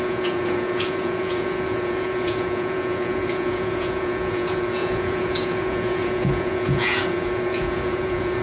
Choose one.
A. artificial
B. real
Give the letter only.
A